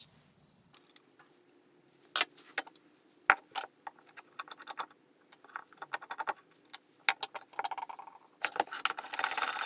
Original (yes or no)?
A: yes